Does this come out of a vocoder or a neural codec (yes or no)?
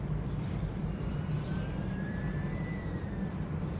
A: yes